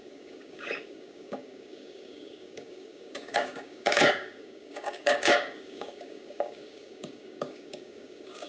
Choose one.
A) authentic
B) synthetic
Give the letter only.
B